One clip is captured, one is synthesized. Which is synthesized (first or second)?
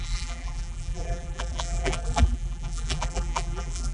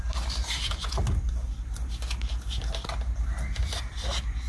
first